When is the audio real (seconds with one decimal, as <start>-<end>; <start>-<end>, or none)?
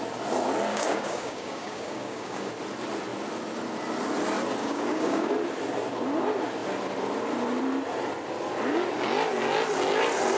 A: 0.0-0.7; 2.5-4.6; 5.3-10.4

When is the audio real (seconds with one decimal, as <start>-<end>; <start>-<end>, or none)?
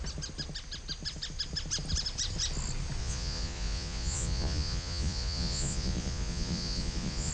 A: 0.0-3.0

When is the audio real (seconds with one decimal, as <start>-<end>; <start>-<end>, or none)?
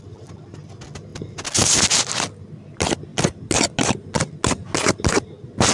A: 0.0-5.7